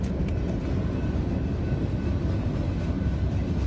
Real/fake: real